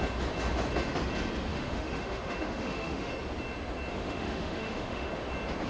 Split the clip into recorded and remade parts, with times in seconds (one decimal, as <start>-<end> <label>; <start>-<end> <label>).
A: 0.0-1.5 recorded; 1.5-3.1 remade; 3.1-3.9 recorded; 3.9-5.1 remade; 5.1-5.7 recorded